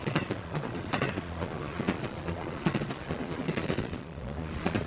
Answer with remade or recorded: remade